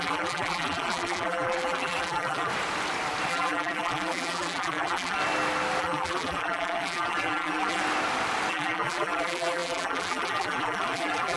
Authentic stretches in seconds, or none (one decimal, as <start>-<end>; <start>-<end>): 2.5-3.3; 5.2-5.8; 7.8-8.5